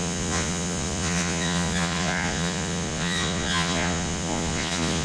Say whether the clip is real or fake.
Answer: fake